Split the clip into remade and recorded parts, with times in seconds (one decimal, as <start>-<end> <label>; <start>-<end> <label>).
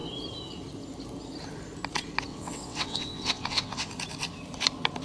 0.0-2.3 recorded; 2.3-3.9 remade; 3.9-5.0 recorded